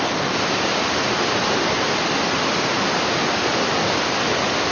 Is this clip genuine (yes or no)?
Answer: yes